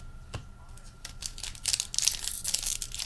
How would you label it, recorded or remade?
recorded